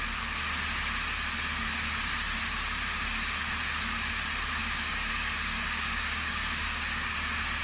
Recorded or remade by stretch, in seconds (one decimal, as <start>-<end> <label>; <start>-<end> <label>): 0.0-4.6 recorded; 4.6-7.6 remade